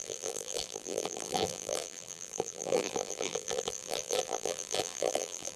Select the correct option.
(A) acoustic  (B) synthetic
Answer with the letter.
B